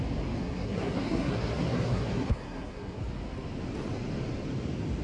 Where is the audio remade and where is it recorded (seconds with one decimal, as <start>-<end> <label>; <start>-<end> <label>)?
0.0-0.4 recorded; 0.4-3.0 remade; 3.0-5.0 recorded